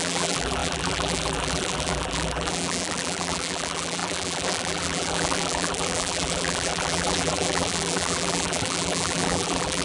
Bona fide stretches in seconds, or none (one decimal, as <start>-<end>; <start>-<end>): none